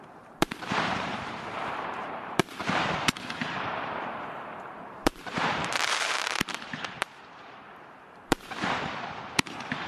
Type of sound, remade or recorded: remade